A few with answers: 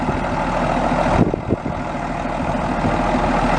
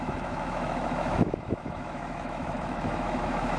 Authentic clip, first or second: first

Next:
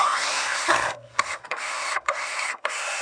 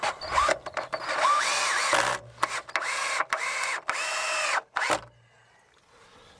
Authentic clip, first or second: second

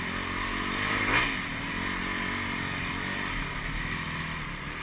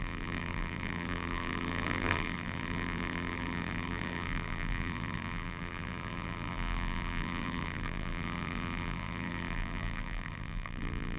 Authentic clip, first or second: first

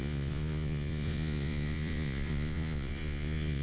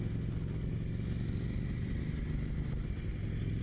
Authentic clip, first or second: second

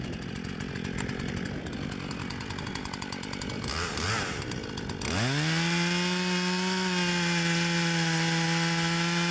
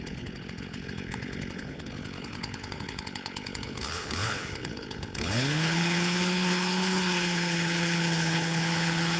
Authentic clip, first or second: first